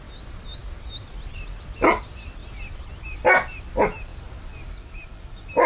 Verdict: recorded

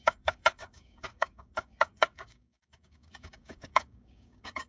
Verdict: remade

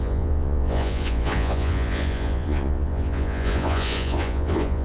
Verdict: remade